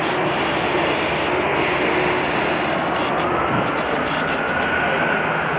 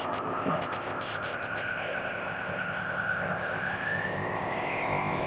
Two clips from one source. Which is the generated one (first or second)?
second